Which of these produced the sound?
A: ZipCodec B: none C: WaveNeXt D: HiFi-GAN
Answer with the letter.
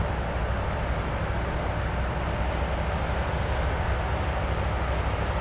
B